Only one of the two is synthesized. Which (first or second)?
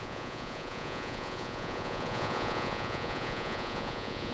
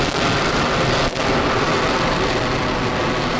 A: first